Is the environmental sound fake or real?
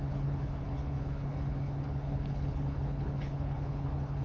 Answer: fake